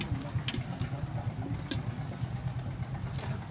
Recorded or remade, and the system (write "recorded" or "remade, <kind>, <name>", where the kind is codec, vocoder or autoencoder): recorded